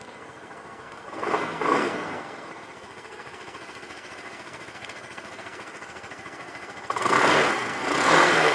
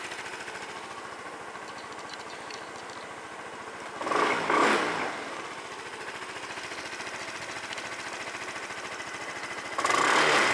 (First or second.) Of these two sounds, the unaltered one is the second